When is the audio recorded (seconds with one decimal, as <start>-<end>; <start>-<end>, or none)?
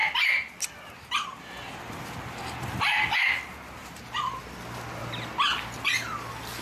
0.0-3.8; 4.4-5.0; 5.9-6.6